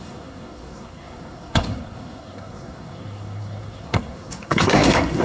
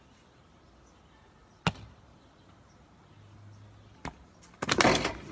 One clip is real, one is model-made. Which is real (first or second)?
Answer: second